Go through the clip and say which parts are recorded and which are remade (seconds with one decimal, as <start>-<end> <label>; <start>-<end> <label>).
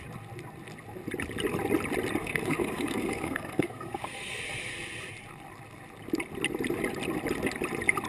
0.0-2.2 recorded; 2.2-4.4 remade; 4.4-8.1 recorded